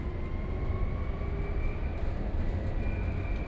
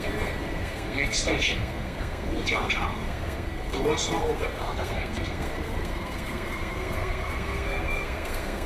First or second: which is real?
first